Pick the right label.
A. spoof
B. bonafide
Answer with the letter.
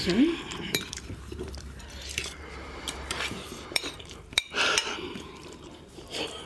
A